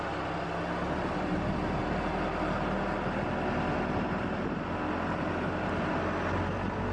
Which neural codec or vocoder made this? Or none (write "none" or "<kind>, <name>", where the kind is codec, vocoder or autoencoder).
none